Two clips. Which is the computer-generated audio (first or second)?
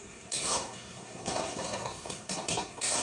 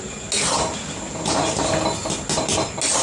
first